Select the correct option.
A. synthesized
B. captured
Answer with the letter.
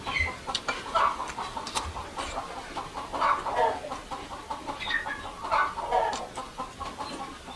B